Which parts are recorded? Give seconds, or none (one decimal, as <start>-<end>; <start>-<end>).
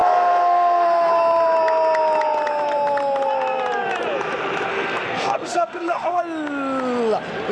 1.1-4.7; 6.2-7.5